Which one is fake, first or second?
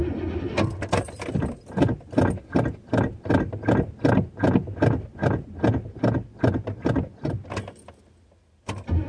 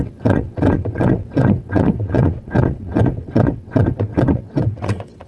second